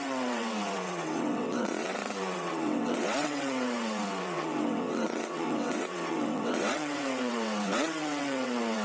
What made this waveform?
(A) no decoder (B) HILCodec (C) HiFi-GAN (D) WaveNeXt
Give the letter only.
D